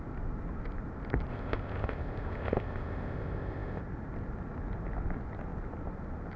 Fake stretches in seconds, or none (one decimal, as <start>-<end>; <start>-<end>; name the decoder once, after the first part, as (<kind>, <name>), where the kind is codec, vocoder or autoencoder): 1.3-3.8 (codec, ZipCodec)